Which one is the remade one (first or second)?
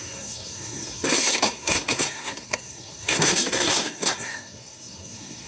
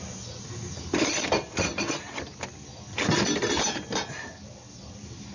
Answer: first